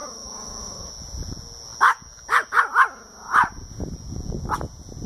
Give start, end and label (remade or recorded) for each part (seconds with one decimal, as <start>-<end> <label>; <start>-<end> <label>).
0.0-0.9 remade; 0.9-5.1 recorded